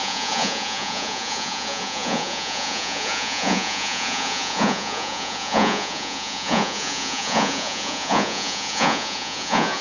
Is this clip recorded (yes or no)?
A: no